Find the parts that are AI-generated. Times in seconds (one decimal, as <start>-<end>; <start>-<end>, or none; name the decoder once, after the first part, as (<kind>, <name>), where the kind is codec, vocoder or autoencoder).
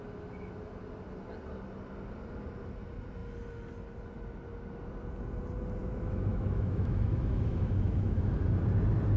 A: 5.8-8.3 (autoencoder, DAC-VAE)